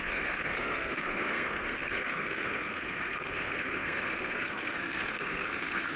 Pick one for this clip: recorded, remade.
remade